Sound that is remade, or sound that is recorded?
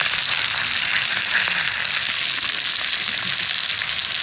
recorded